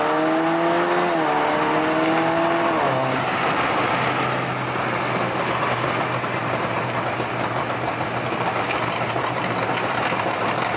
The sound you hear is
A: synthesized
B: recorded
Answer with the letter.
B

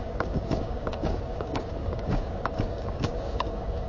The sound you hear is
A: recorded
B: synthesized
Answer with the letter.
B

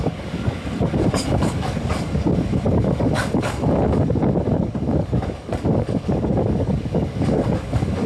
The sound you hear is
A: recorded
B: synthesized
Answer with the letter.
B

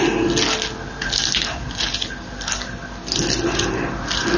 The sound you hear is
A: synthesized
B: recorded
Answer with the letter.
B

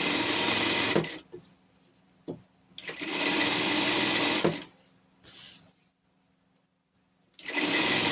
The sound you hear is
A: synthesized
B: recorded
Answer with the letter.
B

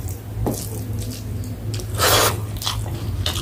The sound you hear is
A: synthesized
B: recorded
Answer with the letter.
B